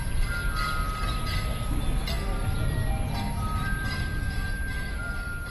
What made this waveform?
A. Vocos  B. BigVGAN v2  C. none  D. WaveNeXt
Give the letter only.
C